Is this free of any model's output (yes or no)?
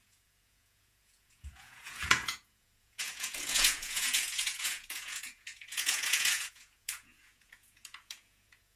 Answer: no